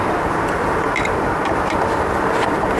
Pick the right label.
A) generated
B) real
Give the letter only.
B